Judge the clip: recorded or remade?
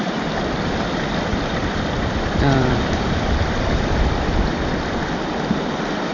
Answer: remade